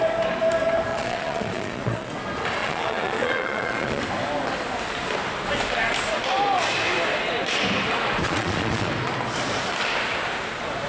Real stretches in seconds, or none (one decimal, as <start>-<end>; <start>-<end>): 0.0-0.9; 2.1-2.6; 4.0-8.2; 8.9-10.9